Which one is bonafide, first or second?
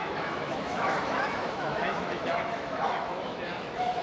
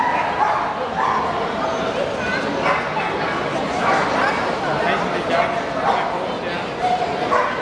second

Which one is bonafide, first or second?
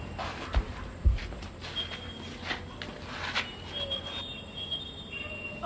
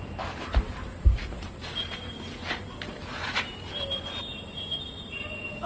first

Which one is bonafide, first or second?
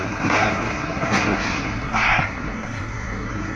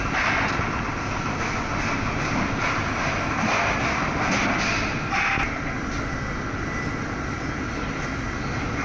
second